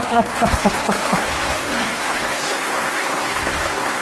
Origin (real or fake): fake